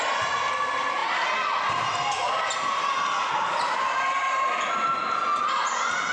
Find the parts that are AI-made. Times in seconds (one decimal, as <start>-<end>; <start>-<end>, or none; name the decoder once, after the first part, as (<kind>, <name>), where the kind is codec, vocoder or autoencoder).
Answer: 5.3-6.1 (vocoder, BigVGAN v2)